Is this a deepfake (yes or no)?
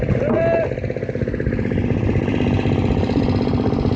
no